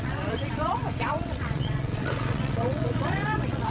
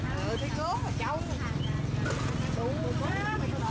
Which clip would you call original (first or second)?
second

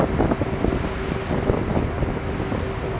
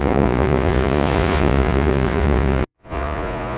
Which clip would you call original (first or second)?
first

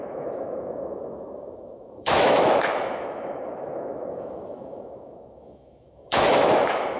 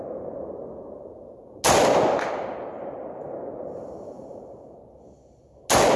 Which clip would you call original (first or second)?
second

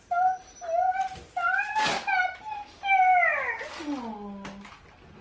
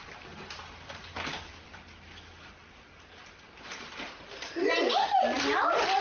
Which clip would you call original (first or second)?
first